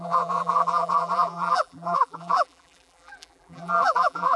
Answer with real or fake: fake